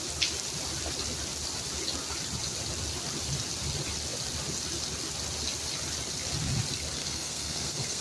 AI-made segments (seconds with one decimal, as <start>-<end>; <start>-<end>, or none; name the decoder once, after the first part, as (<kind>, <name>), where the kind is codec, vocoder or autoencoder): 7.0-8.0 (codec, SNAC)